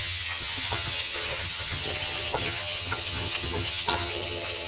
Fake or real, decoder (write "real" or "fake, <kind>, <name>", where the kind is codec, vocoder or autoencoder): fake, vocoder, HiFi-GAN